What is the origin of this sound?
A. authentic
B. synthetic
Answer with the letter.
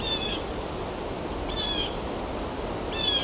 A